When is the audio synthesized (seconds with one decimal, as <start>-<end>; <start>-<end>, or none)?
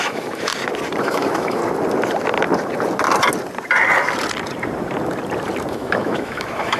0.0-0.5; 1.0-1.6; 5.7-6.8